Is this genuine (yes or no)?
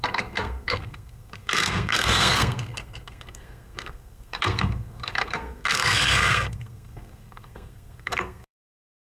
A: no